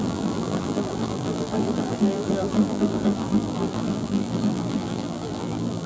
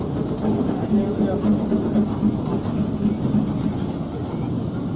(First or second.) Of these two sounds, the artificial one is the first